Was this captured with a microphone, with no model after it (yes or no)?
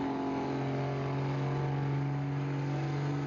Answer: yes